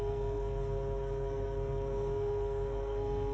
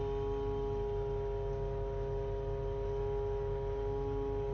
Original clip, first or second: second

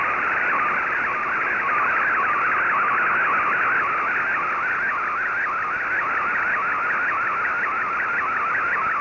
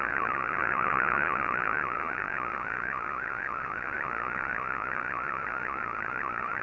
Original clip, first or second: first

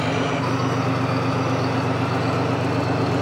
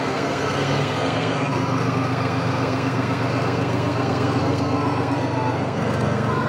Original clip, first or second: first